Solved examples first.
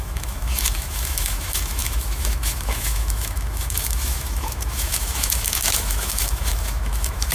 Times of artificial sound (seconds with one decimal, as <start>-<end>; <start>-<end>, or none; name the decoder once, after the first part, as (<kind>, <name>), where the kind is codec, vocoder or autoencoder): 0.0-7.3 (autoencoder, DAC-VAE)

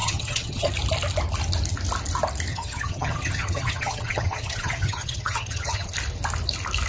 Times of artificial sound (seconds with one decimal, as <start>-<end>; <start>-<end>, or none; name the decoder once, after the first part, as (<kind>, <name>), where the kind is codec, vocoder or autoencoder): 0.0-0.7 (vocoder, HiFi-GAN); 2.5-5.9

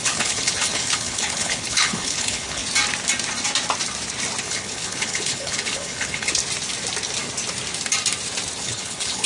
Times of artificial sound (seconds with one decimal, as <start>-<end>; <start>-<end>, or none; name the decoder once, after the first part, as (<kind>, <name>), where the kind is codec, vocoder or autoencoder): 0.0-2.6 (codec, HILCodec); 4.4-6.4; 8.6-9.3

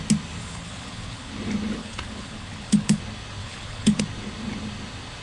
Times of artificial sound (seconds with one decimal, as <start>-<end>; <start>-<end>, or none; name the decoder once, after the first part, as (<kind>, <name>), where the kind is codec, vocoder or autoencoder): 0.4-1.3 (codec, HILCodec); 1.8-3.0; 3.4-4.0